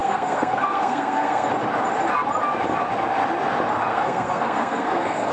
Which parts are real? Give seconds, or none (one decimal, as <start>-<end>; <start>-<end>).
1.5-3.9